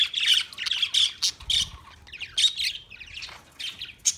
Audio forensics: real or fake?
real